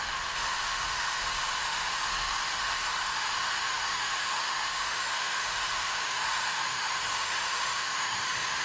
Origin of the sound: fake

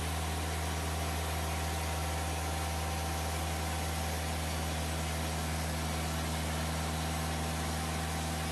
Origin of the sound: real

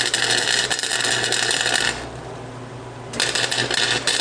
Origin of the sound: real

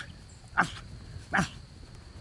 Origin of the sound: real